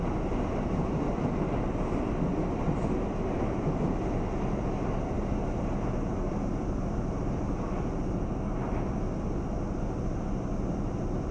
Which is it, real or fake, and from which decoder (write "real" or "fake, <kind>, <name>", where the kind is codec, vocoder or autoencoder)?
real